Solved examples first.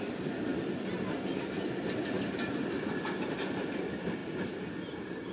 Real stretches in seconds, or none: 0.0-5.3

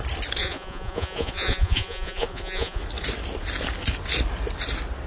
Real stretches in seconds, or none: 0.0-0.4; 2.8-5.1

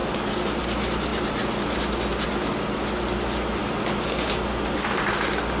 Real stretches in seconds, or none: 0.0-5.6

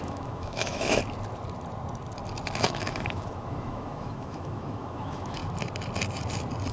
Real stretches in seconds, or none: 1.0-2.6; 5.4-6.7

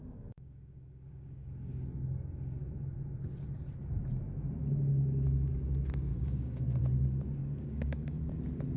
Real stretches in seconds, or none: 1.7-6.1; 6.8-7.4; 8.3-8.8

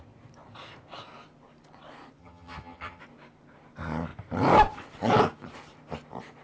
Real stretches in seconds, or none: 0.0-2.2; 3.0-6.4

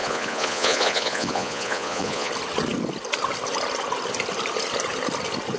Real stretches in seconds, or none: 2.3-5.6

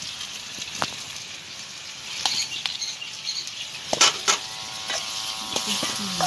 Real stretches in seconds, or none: 0.0-6.3